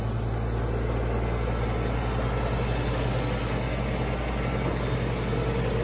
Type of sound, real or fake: real